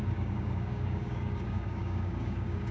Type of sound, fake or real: fake